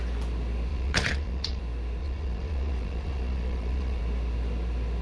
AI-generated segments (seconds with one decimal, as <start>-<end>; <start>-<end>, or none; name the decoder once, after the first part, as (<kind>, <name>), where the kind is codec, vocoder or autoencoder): 0.7-1.6 (vocoder, Vocos); 2.0-4.0